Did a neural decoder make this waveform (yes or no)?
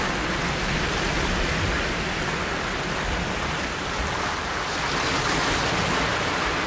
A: no